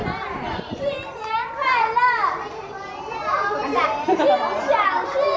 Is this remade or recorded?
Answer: recorded